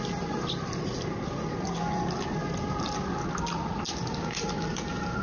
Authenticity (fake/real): real